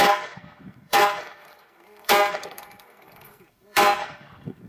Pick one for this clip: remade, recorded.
remade